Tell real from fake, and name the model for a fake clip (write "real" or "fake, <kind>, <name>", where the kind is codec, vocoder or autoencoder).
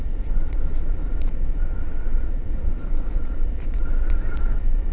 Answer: fake, vocoder, Vocos